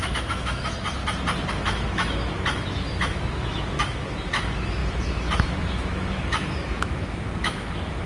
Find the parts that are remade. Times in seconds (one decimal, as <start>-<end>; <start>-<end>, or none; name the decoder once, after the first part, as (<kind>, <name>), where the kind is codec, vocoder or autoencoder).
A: 0.0-1.0 (autoencoder, DAC-VAE); 1.5-8.1